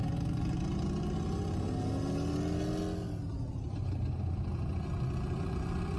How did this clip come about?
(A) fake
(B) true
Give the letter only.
B